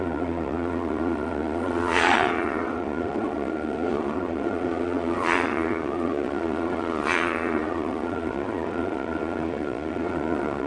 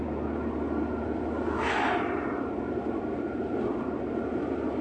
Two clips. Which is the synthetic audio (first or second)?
first